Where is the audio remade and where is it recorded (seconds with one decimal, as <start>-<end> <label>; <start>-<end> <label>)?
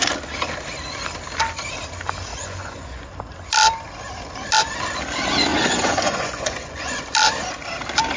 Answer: 0.0-2.3 recorded; 2.3-3.0 remade; 3.0-5.5 recorded; 5.5-7.0 remade; 7.0-8.2 recorded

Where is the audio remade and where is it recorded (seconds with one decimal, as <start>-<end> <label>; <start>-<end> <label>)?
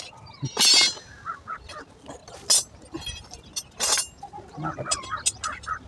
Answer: 0.0-5.9 recorded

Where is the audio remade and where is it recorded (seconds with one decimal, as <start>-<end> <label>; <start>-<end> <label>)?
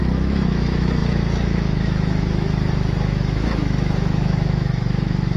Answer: 0.0-5.4 remade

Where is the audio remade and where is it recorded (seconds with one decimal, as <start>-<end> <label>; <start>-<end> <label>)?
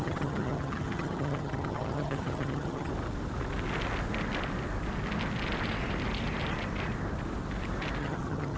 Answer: 0.0-2.9 remade; 2.9-8.0 recorded; 8.0-8.6 remade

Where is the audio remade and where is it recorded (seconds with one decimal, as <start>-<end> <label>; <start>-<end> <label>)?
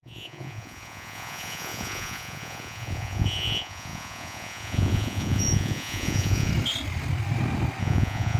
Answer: 0.0-6.5 remade; 6.5-7.8 recorded; 7.8-8.4 remade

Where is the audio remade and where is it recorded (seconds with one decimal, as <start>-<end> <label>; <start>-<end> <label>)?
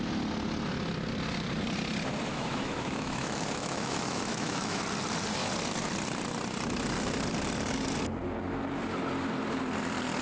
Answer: 0.0-2.3 recorded; 2.3-4.8 remade; 4.8-10.2 recorded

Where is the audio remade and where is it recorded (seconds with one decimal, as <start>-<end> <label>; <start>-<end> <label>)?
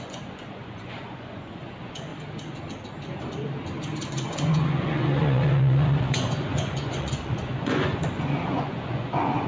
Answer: 0.0-2.1 remade; 2.1-4.1 recorded; 4.1-9.5 remade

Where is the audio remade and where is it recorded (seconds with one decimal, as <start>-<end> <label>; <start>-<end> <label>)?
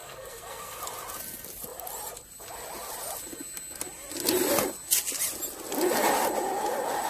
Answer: 0.0-0.8 remade; 0.8-7.1 recorded